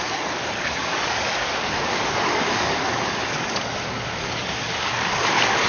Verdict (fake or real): fake